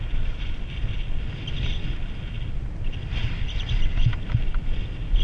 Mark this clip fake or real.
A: real